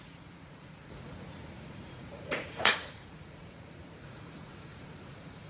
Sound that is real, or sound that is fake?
fake